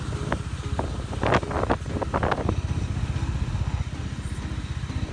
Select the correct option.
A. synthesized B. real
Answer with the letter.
B